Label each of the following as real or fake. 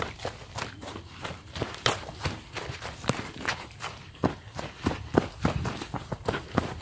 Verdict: real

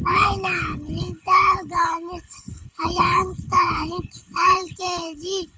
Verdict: fake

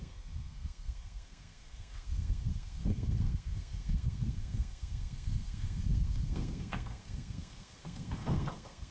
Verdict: fake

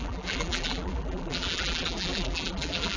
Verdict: fake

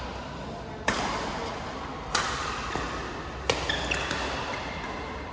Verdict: real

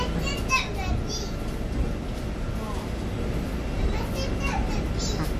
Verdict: real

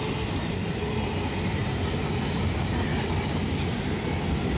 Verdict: real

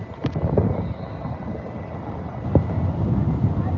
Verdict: real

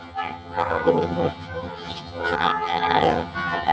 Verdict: fake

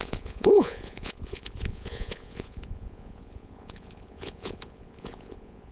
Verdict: fake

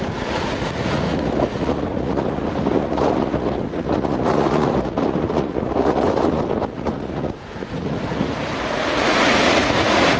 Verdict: fake